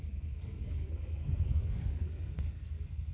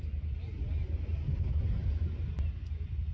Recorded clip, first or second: second